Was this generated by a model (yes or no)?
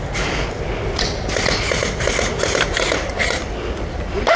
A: no